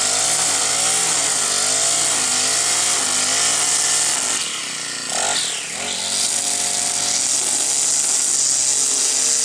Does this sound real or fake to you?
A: real